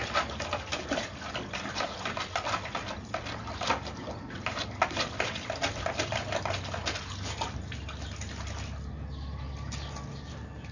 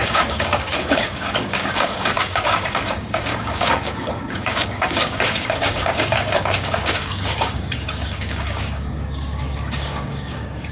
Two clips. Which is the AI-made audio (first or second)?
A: second